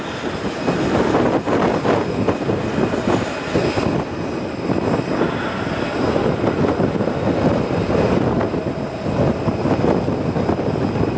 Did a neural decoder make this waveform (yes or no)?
no